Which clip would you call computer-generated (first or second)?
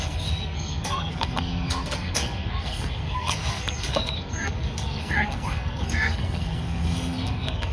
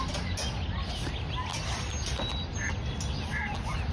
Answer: first